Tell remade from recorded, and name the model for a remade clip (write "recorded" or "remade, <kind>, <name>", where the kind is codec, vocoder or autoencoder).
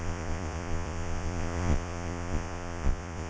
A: remade, vocoder, Vocos